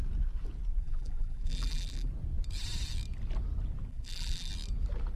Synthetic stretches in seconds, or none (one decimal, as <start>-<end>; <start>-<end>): 0.8-2.1; 3.9-4.5